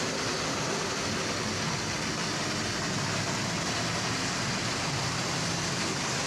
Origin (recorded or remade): recorded